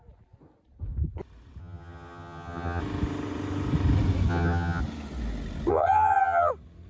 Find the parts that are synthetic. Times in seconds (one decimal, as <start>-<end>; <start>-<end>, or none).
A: 1.6-2.8; 4.3-4.8; 5.7-6.5